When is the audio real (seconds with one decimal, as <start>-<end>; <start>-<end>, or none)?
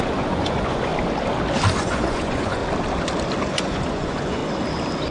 0.9-1.8; 2.6-3.4; 4.4-5.1